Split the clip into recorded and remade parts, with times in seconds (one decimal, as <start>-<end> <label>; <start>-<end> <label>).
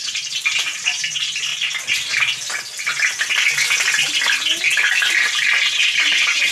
0.0-6.5 recorded